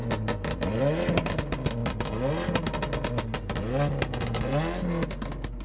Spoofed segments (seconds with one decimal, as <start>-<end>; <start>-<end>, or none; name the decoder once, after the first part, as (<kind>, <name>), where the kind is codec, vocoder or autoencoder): none